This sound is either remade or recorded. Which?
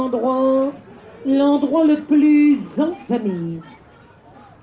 recorded